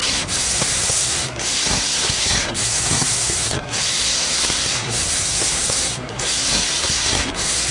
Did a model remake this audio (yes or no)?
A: yes